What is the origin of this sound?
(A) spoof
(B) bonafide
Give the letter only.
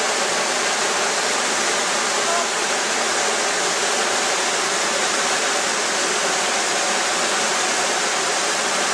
A